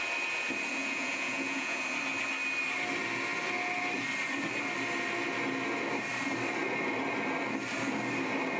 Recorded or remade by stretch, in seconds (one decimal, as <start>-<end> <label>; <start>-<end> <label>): 0.0-0.8 recorded; 0.8-1.8 remade; 1.8-8.6 recorded